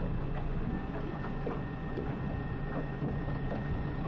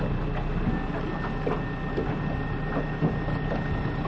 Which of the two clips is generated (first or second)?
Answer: first